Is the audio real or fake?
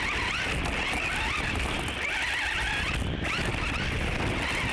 real